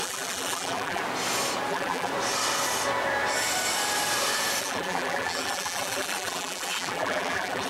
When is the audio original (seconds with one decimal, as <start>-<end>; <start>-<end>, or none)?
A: 1.0-1.7; 2.1-4.6